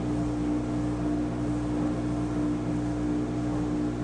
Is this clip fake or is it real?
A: real